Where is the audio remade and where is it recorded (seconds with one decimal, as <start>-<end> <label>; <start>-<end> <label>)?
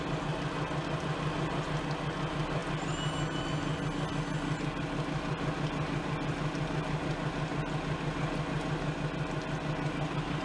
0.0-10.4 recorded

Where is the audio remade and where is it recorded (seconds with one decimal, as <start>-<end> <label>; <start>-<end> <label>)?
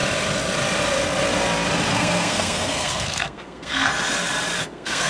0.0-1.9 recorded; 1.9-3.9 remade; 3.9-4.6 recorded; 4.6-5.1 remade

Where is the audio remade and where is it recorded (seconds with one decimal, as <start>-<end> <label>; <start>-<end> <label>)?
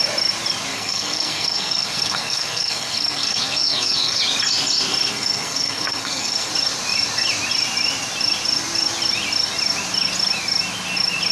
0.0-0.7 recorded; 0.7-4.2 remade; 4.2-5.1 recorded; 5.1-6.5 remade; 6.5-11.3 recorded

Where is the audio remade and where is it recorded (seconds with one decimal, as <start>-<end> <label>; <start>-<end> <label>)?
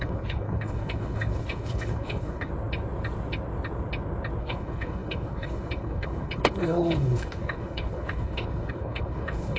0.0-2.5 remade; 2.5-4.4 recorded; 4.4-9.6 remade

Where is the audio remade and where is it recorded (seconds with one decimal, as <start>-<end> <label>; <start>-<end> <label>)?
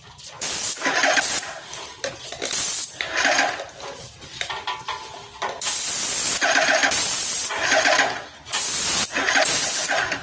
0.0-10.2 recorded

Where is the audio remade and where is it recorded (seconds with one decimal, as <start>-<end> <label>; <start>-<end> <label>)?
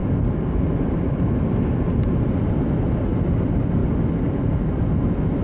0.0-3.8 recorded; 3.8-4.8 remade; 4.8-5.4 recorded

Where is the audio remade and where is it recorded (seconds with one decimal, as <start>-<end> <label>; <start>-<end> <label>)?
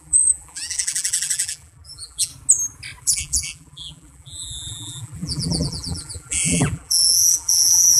0.0-2.3 remade; 2.3-3.0 recorded; 3.0-8.0 remade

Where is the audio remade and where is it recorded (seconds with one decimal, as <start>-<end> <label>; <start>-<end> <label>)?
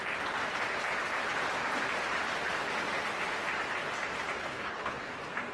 0.0-4.4 recorded; 4.4-5.1 remade; 5.1-5.5 recorded